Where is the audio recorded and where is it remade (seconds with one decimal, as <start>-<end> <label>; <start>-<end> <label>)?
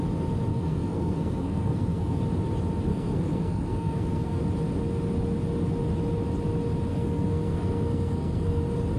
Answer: 0.0-0.5 recorded; 0.5-2.2 remade; 2.2-2.9 recorded; 2.9-4.4 remade; 4.4-6.9 recorded; 6.9-8.6 remade; 8.6-9.0 recorded